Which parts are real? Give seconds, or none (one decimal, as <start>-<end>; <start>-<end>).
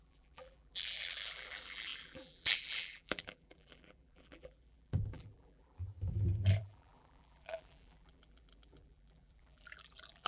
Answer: 5.9-6.6